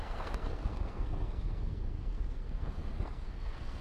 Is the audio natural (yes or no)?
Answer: no